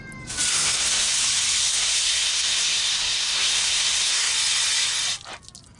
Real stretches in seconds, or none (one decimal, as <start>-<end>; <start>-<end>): 0.0-0.5; 1.1-1.6; 4.3-5.8